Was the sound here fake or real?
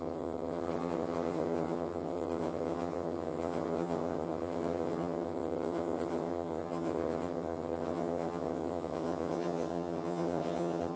fake